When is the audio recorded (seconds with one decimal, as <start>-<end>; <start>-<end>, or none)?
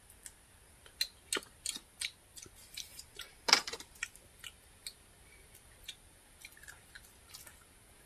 0.0-2.9; 4.2-8.1